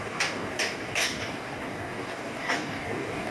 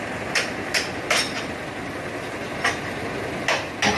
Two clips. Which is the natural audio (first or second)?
second